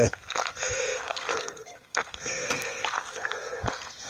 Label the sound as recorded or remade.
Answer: remade